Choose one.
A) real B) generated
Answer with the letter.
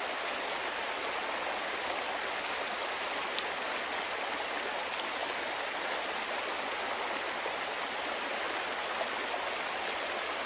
A